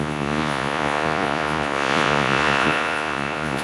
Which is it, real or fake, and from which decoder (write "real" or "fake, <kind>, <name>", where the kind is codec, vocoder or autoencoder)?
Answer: fake, vocoder, Vocos